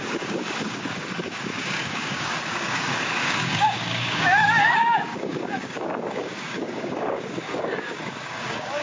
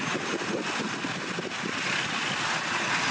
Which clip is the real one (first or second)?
second